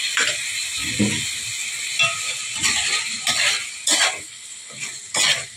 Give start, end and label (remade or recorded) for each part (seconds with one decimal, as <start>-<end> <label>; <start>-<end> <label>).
0.0-5.6 recorded

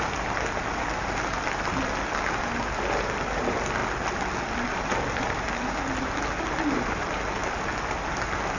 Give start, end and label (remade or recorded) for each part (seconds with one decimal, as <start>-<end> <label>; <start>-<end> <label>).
0.0-8.6 recorded

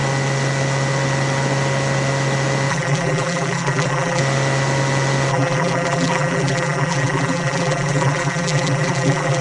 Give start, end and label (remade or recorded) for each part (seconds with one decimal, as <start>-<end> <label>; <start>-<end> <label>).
0.0-2.7 recorded; 2.7-4.2 remade; 4.2-5.3 recorded; 5.3-9.4 remade

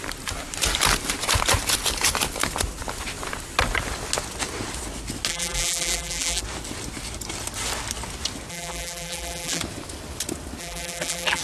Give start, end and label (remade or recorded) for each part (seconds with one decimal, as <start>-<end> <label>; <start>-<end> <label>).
0.0-5.3 recorded; 5.3-6.4 remade; 6.4-8.5 recorded; 8.5-9.6 remade; 9.6-10.6 recorded; 10.6-11.4 remade